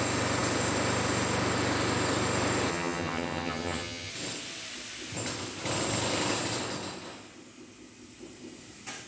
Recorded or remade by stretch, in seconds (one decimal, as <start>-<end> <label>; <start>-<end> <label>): 0.0-2.7 recorded; 2.7-4.1 remade; 4.1-9.1 recorded